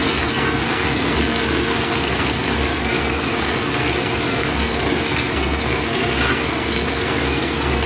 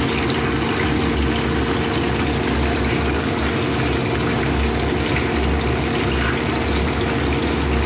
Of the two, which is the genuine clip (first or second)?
second